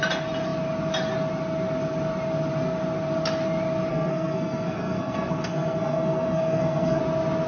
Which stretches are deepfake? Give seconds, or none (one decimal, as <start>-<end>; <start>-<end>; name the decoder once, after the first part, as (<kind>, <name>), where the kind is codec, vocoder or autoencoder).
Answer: 3.9-7.0 (codec, SNAC)